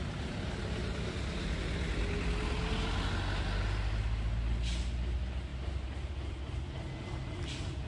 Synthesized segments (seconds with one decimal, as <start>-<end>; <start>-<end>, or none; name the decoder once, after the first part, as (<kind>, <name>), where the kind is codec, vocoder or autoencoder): none